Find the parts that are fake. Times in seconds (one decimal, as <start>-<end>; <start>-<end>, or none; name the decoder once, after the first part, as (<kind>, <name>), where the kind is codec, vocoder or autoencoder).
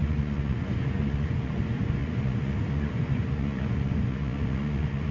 0.0-1.6 (vocoder, Vocos); 2.0-5.1